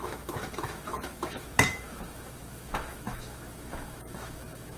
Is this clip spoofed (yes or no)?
yes